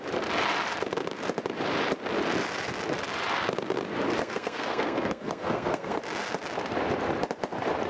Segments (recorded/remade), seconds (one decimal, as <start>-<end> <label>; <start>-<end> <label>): 0.0-4.2 recorded; 4.2-6.0 remade; 6.0-7.9 recorded